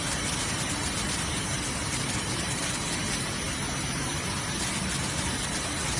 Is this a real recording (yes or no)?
yes